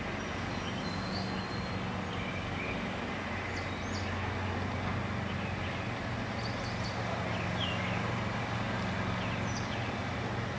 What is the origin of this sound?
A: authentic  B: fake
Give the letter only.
A